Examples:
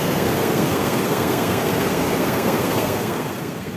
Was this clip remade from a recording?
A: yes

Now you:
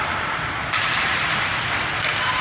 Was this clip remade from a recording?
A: no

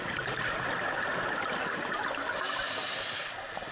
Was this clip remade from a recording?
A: no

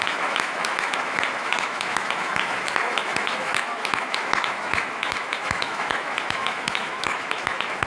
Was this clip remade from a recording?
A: yes